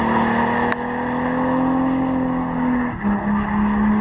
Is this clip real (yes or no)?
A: yes